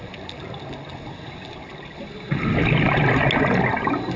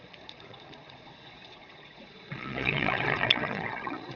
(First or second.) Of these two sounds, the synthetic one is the second